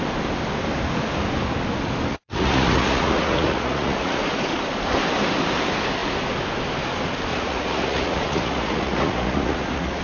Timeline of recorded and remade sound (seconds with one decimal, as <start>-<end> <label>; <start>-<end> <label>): 0.0-2.1 recorded; 2.1-4.2 remade; 4.2-7.3 recorded; 7.3-10.0 remade